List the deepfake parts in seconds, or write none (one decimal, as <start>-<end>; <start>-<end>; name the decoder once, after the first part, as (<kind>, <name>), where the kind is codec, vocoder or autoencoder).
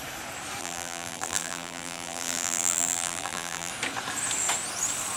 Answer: 0.6-3.7 (vocoder, BigVGAN v2)